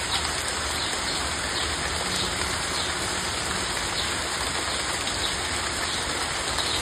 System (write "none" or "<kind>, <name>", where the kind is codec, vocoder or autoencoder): none